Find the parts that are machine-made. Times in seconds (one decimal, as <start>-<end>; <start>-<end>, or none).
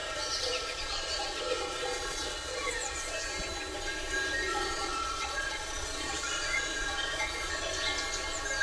0.0-3.1; 4.5-7.7